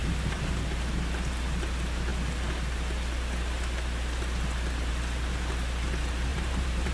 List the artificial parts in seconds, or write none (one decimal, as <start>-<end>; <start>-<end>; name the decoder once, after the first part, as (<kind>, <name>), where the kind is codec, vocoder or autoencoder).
0.0-0.5 (vocoder, BigVGAN v2); 6.3-6.9